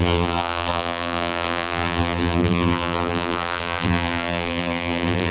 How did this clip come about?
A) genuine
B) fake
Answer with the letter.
B